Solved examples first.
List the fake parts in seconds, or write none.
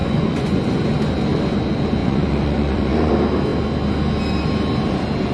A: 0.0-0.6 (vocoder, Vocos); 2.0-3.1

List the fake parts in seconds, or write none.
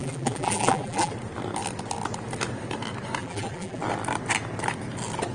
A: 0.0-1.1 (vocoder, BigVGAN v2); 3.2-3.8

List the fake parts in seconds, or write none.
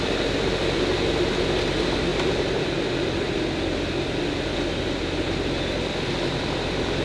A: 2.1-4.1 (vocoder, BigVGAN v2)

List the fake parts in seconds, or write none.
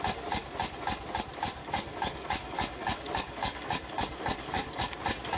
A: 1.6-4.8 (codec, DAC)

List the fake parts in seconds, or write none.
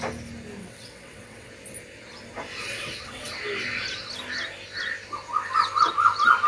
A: 0.6-1.5 (vocoder, WaveNeXt); 2.6-3.3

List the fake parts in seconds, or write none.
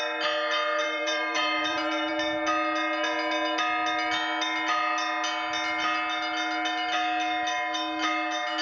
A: 0.8-2.1 (vocoder, BigVGAN v2)